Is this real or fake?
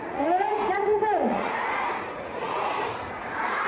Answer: fake